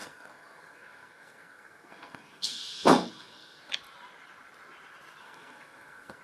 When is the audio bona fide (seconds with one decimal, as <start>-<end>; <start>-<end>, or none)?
3.7-5.2

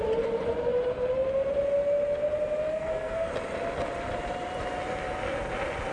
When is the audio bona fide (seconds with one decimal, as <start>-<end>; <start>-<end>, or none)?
0.0-2.7; 3.3-5.9

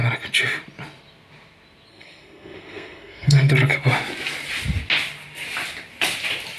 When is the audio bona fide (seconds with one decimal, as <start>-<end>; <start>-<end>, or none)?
0.0-1.9; 3.5-6.6

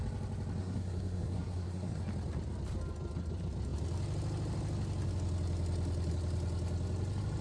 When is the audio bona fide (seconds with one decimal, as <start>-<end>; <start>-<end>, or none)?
0.0-0.6; 2.0-7.4

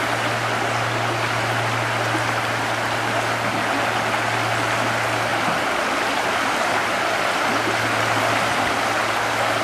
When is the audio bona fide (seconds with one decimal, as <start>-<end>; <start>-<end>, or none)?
0.0-9.6